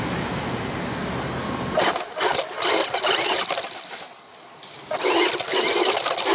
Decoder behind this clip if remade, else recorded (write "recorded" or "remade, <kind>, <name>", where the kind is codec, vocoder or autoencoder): recorded